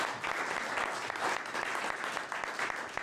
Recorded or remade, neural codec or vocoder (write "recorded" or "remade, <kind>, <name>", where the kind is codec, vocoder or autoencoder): recorded